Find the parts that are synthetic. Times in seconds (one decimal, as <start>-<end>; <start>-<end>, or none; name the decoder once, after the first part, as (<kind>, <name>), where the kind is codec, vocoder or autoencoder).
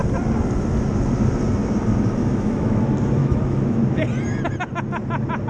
2.2-2.8 (autoencoder, DAC-VAE); 3.2-4.0